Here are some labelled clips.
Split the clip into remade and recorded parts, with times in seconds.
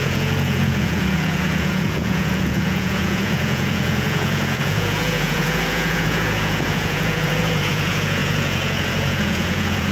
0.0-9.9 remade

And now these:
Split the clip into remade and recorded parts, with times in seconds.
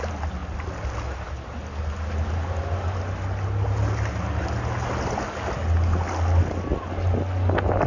0.0-7.9 recorded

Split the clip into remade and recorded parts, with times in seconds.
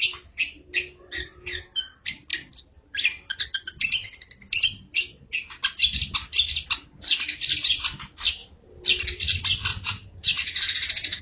0.0-9.7 recorded; 9.7-11.2 remade